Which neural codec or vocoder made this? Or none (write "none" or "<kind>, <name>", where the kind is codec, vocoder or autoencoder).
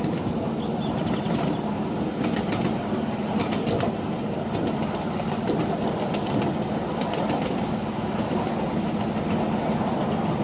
none